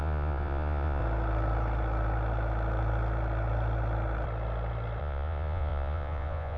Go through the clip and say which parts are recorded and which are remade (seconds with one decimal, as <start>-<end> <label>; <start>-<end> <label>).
0.0-1.0 remade; 1.0-5.0 recorded; 5.0-6.6 remade